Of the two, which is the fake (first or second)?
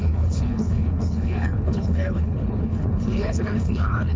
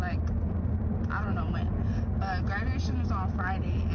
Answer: first